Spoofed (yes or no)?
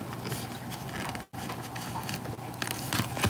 no